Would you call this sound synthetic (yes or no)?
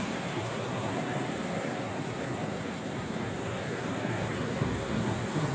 yes